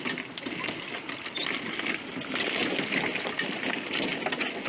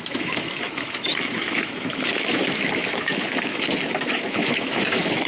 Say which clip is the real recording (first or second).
first